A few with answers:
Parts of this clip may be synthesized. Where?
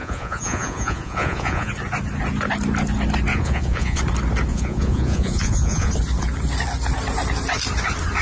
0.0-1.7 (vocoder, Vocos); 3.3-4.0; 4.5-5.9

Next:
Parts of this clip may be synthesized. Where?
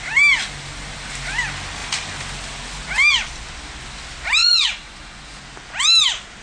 4.4-5.4 (vocoder, Vocos)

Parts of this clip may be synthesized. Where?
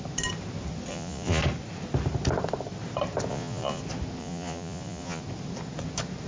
0.9-1.4 (vocoder, Vocos); 3.3-3.8; 4.2-5.2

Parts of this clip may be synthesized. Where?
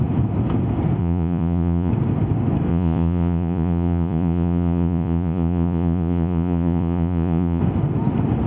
1.0-1.9 (vocoder, Vocos); 2.7-7.6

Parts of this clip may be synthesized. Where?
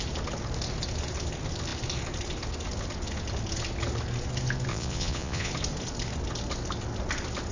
4.7-5.5 (vocoder, Vocos)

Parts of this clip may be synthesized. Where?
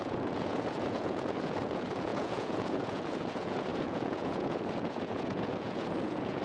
0.0-6.4 (vocoder, Vocos)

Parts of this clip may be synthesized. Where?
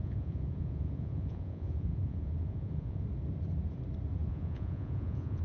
0.0-3.0 (vocoder, Vocos); 4.2-5.4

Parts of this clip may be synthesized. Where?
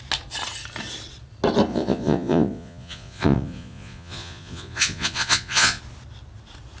1.7-5.8 (vocoder, Vocos)